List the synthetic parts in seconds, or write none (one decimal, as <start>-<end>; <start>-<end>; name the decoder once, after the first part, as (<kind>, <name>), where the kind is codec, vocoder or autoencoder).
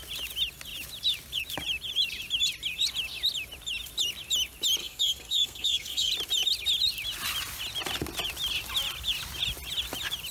4.8-6.1 (codec, SNAC)